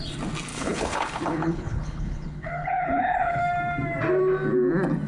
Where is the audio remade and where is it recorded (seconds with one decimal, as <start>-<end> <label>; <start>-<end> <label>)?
0.0-0.5 recorded; 0.5-3.4 remade; 3.4-5.1 recorded

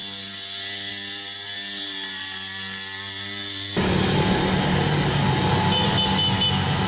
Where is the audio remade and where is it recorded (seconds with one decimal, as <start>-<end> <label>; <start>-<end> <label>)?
0.0-6.9 recorded

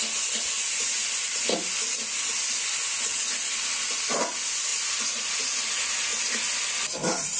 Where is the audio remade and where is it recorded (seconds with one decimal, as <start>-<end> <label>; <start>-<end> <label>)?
0.0-6.1 recorded; 6.1-6.9 remade; 6.9-7.4 recorded

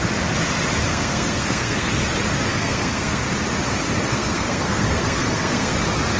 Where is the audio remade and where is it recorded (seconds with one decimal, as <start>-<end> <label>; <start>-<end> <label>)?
0.0-0.9 recorded; 0.9-1.9 remade; 1.9-2.5 recorded; 2.5-3.2 remade; 3.2-4.1 recorded; 4.1-5.8 remade; 5.8-6.2 recorded

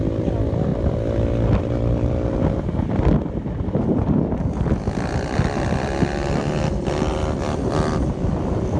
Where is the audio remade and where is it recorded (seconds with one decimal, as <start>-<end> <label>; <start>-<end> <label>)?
0.0-8.8 recorded

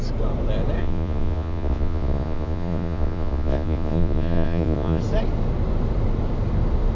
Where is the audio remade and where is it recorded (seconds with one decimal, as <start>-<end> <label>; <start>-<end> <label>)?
0.0-0.8 recorded; 0.8-5.0 remade; 5.0-7.0 recorded

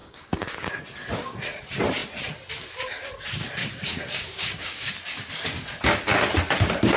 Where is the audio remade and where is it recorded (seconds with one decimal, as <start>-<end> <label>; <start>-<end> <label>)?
0.0-0.8 remade; 0.8-3.6 recorded; 3.6-4.9 remade; 4.9-7.0 recorded

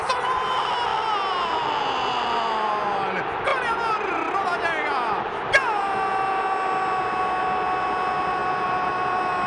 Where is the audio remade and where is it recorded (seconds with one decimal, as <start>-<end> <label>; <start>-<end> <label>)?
0.0-9.5 recorded